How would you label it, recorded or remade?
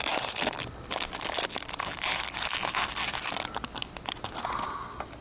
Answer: recorded